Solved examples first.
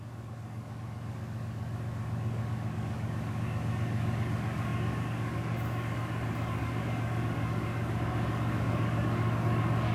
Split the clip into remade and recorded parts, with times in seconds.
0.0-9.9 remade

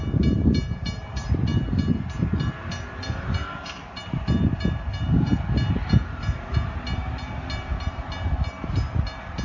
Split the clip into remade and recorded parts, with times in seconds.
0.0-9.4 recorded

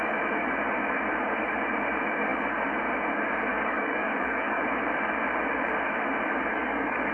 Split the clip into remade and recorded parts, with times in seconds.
0.0-3.5 recorded; 3.5-4.6 remade; 4.6-6.5 recorded; 6.5-7.1 remade

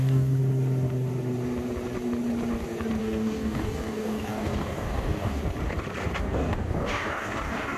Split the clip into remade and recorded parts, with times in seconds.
0.0-0.4 remade; 0.4-3.0 recorded; 3.0-5.4 remade; 5.4-6.2 recorded; 6.2-7.8 remade

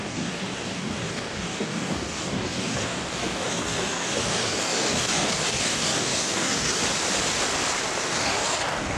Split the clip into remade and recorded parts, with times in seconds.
0.0-6.8 remade; 6.8-8.0 recorded; 8.0-9.0 remade

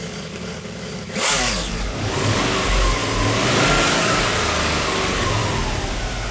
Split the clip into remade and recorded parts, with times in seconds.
0.0-3.0 remade; 3.0-3.8 recorded; 3.8-5.4 remade; 5.4-6.3 recorded